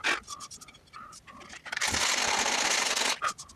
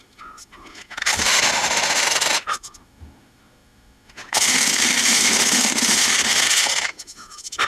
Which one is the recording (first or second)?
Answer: first